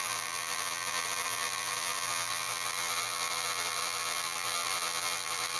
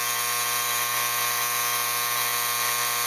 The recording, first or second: second